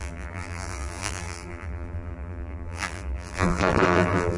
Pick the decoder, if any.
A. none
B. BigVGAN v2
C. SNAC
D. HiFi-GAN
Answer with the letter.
B